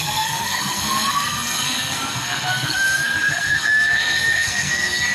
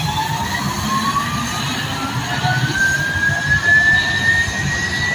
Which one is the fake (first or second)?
first